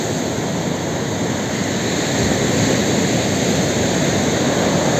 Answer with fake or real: real